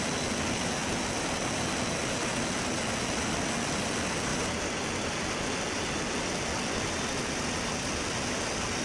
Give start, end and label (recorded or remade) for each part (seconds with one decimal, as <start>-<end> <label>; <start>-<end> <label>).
0.0-8.8 recorded